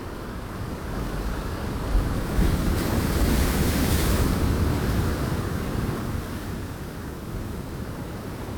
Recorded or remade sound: remade